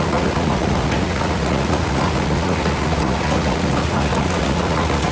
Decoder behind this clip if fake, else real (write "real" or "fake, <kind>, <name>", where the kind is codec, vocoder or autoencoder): fake, vocoder, Vocos